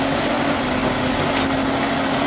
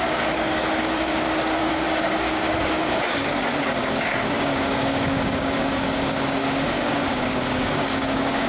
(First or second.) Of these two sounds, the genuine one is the first